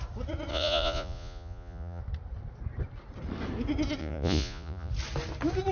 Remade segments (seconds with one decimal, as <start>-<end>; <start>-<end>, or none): 0.5-2.0; 4.0-4.9